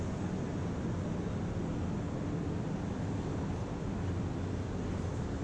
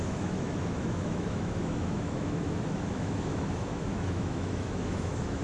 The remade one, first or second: second